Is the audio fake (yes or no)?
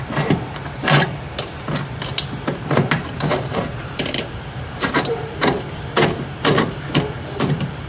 yes